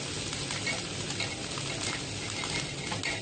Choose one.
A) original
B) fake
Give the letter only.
A